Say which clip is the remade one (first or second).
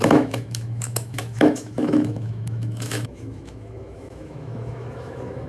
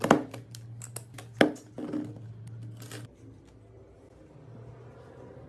first